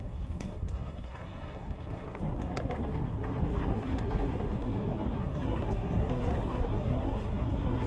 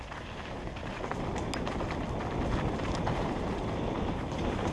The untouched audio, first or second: second